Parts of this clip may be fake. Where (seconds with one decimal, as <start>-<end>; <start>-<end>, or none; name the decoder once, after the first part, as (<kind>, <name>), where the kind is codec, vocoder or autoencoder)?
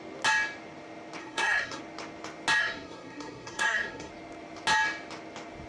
1.2-1.8 (codec, SNAC); 2.6-4.1